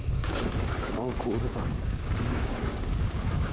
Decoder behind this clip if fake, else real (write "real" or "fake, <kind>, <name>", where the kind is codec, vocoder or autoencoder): fake, codec, DAC